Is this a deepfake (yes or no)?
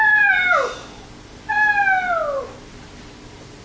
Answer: no